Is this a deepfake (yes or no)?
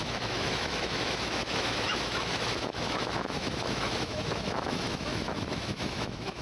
yes